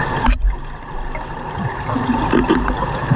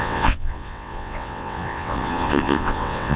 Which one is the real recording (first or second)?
first